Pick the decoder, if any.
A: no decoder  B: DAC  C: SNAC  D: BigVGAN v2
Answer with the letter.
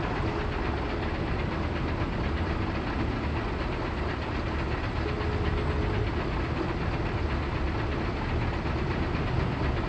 A